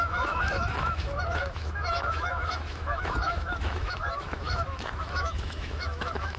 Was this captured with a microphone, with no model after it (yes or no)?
no